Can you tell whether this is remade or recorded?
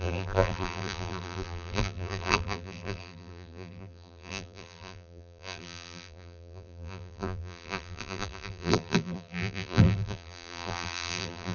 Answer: remade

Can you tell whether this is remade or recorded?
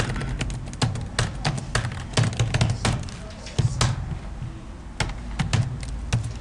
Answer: recorded